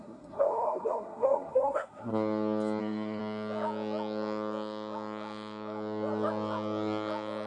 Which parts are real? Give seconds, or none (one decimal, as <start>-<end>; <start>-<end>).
2.1-2.8; 3.2-7.5

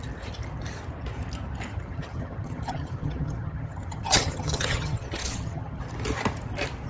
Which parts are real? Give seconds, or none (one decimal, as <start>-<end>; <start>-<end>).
0.0-1.7; 5.8-6.9

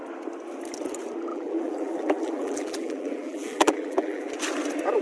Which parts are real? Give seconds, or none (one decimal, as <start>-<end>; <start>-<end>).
0.0-1.3; 4.3-5.0

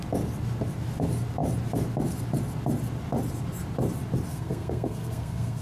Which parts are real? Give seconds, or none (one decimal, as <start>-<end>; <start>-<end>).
0.0-4.3

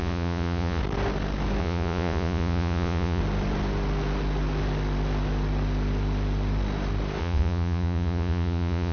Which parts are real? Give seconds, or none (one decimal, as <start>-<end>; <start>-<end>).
0.8-1.6; 3.2-7.2

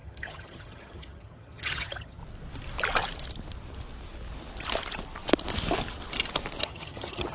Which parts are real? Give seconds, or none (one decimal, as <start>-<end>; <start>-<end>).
2.2-6.6

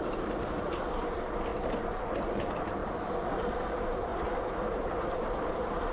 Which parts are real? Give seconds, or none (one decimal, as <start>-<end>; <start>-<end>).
1.5-2.3; 4.1-5.5